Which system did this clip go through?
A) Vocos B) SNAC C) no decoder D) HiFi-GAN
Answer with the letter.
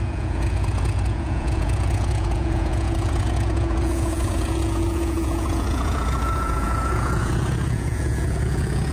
A